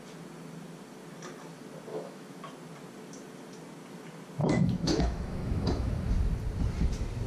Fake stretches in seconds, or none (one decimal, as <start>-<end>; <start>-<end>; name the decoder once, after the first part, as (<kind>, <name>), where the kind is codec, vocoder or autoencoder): 1.9-2.4 (autoencoder, DAC-VAE); 4.4-5.9